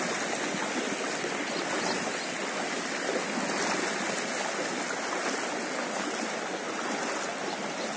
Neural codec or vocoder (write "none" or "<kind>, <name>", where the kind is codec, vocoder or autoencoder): none